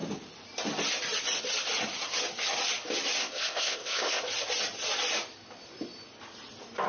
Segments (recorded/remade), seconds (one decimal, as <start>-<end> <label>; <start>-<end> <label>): 0.0-3.2 recorded; 3.2-4.2 remade; 4.2-6.9 recorded